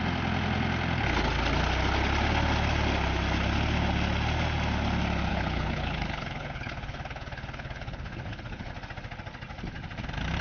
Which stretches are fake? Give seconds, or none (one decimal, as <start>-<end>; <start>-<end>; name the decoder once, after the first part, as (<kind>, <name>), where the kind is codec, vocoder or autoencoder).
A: 5.3-8.7 (codec, HILCodec)